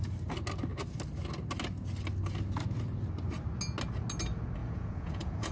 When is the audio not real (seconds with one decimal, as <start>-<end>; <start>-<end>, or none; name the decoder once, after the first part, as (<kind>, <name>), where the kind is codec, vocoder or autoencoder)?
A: 4.6-5.5 (vocoder, Vocos)